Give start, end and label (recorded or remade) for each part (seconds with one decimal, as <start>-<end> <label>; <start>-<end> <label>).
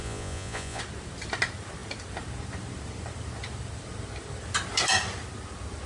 0.0-0.8 remade; 0.8-5.9 recorded